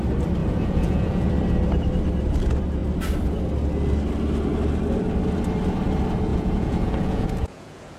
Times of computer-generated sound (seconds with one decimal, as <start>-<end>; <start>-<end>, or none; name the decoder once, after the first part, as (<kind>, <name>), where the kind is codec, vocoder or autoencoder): 0.4-1.3 (vocoder, Vocos); 6.3-8.0